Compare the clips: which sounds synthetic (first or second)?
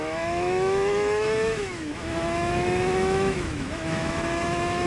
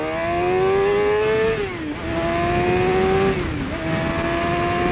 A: first